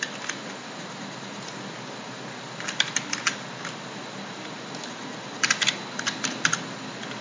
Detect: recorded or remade recorded